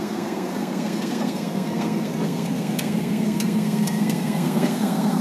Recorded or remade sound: remade